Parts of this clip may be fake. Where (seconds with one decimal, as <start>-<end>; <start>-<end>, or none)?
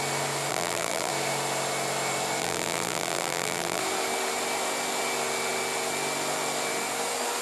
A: 0.5-1.1; 2.4-3.8